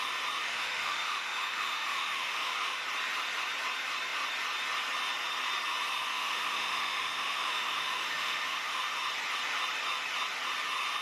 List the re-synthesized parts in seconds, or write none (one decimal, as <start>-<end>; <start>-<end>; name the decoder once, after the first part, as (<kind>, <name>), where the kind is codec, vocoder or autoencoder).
0.4-2.8 (autoencoder, DAC-VAE); 6.1-8.8